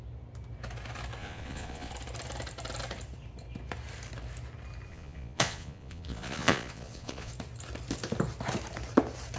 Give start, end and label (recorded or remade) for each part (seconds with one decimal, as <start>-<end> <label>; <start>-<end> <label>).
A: 0.0-1.2 recorded; 1.2-1.9 remade; 1.9-4.9 recorded; 4.9-7.3 remade; 7.3-9.4 recorded